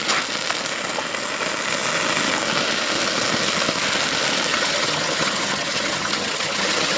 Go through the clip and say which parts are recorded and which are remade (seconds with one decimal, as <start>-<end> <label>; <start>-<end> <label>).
0.0-4.5 recorded; 4.5-7.0 remade